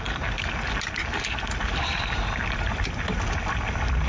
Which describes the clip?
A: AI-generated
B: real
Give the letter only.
B